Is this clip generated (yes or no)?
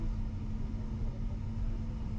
no